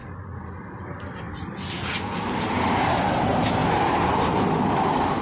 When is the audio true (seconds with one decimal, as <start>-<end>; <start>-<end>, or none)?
0.0-5.2